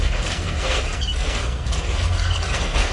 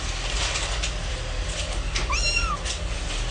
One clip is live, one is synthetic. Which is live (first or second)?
second